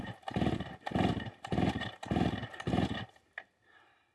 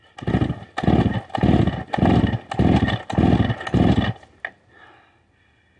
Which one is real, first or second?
second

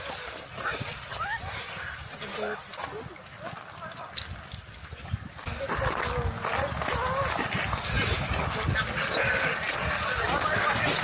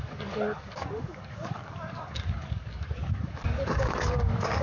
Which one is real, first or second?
first